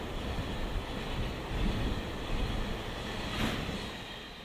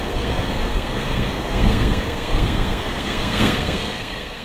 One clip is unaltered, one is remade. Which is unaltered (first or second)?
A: first